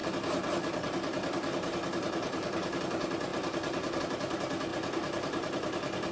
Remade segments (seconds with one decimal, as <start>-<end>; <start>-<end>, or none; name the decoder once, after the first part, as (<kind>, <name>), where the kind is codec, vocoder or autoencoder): 0.0-2.8 (vocoder, BigVGAN v2); 4.7-6.1